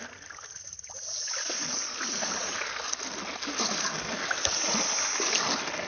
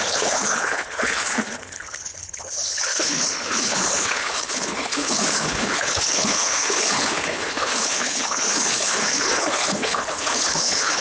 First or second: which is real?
first